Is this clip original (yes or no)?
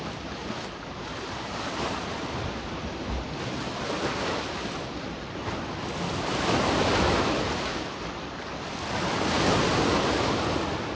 yes